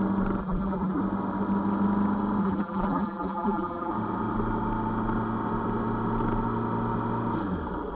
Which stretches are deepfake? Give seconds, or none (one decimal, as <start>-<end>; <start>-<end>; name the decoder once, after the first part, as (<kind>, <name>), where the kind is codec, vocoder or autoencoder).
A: 0.4-1.0 (vocoder, BigVGAN v2); 2.4-3.9